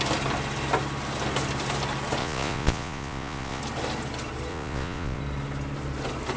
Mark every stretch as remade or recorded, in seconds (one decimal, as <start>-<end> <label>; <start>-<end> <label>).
0.0-2.2 recorded; 2.2-3.6 remade; 3.6-4.5 recorded; 4.5-5.2 remade; 5.2-6.4 recorded